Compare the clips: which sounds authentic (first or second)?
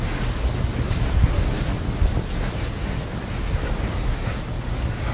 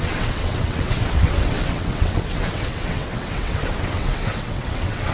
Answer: first